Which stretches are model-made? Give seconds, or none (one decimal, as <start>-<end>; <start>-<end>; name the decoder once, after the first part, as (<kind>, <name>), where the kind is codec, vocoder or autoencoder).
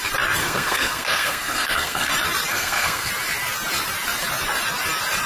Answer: 0.4-2.1 (codec, SNAC); 2.5-3.1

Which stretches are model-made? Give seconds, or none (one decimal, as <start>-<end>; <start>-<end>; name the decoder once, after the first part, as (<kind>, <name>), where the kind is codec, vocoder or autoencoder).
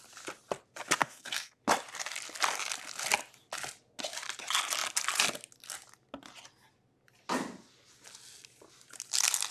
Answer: 1.0-1.6 (codec, SNAC)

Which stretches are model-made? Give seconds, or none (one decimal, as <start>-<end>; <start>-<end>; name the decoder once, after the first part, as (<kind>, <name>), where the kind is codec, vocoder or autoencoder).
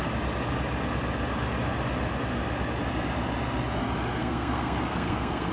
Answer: 4.2-5.5 (codec, SNAC)